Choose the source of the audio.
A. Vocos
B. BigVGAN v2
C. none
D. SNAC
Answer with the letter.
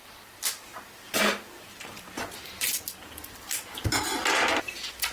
B